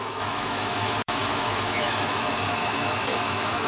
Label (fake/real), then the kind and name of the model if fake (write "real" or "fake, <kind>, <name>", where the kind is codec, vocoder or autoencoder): fake, autoencoder, DAC-VAE